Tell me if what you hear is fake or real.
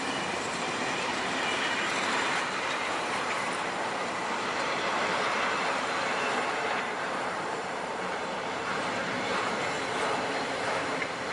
fake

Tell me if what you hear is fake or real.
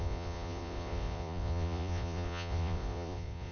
fake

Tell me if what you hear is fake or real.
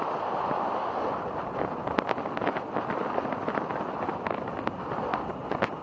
real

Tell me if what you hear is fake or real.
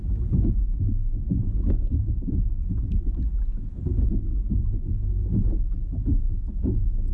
real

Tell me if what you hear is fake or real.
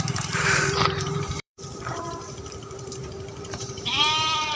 fake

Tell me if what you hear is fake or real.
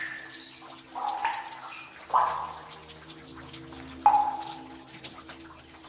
real